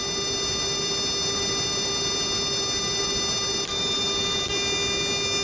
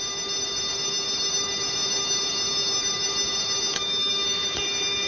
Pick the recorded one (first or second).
first